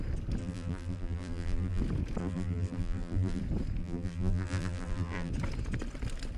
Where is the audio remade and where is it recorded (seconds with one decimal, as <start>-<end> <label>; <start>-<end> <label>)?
0.0-0.4 recorded; 0.4-1.8 remade; 1.8-2.2 recorded; 2.2-3.4 remade; 3.4-3.8 recorded; 3.8-5.3 remade; 5.3-6.4 recorded

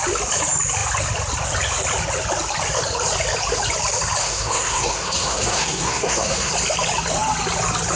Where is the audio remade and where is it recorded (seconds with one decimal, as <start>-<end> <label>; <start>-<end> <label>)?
0.0-4.2 recorded; 4.2-6.5 remade; 6.5-8.0 recorded

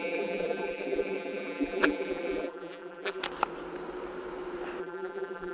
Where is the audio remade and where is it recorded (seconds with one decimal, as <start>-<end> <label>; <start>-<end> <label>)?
0.0-3.2 remade; 3.2-4.8 recorded; 4.8-5.5 remade

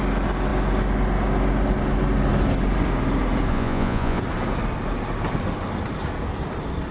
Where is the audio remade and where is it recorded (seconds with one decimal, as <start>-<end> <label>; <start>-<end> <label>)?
0.0-3.5 recorded; 3.5-4.2 remade; 4.2-6.9 recorded

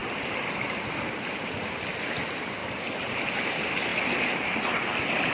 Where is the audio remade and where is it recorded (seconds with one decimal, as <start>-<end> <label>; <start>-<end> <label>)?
0.0-5.3 recorded

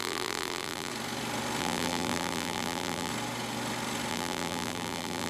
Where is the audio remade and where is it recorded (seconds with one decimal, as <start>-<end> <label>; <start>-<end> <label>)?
0.0-0.9 remade; 0.9-1.6 recorded; 1.6-3.1 remade; 3.1-4.1 recorded; 4.1-5.3 remade